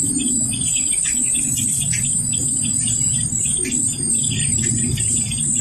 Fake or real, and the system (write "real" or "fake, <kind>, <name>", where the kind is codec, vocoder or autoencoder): real